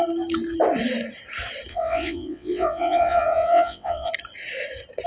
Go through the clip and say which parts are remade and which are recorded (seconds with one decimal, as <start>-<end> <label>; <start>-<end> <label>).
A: 0.0-1.7 recorded; 1.7-4.1 remade; 4.1-5.1 recorded